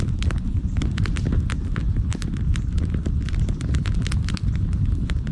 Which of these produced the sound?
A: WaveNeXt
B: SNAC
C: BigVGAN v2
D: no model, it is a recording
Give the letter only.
D